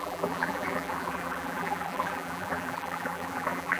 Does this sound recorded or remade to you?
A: remade